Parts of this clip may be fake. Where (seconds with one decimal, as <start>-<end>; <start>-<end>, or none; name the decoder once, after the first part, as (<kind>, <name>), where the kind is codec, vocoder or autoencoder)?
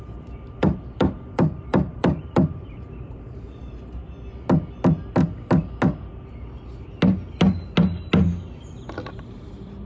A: 0.0-4.0 (vocoder, BigVGAN v2); 9.1-9.9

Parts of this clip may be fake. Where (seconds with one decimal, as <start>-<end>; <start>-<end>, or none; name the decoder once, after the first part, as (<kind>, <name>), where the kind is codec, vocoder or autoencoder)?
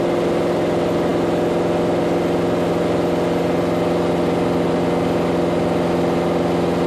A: none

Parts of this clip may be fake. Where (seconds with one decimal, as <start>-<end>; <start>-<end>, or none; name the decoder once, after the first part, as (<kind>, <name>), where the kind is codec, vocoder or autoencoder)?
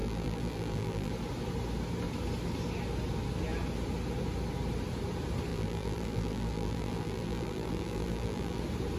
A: 0.0-1.1 (vocoder, BigVGAN v2); 5.5-8.6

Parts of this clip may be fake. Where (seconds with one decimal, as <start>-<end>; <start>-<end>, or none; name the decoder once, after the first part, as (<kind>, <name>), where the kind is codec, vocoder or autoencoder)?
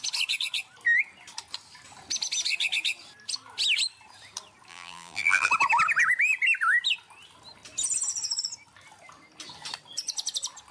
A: 4.7-5.5 (vocoder, BigVGAN v2)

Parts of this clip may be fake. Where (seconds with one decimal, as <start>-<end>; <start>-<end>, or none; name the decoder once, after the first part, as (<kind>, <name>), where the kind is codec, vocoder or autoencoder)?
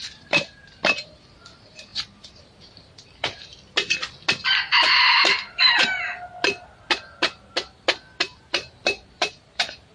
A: 0.0-3.5 (vocoder, BigVGAN v2); 8.5-9.9